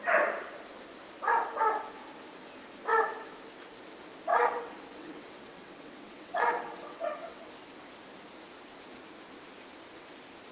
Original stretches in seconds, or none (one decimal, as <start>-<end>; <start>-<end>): 0.0-4.3; 7.5-10.5